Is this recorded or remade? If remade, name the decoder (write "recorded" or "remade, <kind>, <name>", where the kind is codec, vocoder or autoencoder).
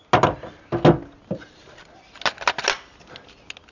recorded